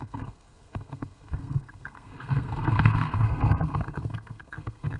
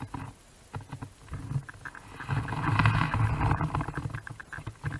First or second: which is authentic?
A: second